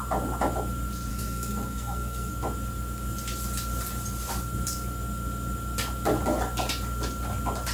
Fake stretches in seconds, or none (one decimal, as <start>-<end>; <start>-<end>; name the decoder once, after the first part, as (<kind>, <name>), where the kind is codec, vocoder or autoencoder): 1.1-2.3 (codec, SNAC)